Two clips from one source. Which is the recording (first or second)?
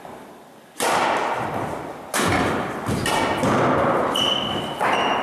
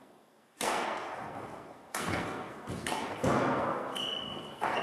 first